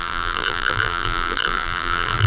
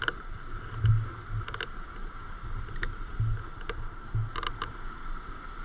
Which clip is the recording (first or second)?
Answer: second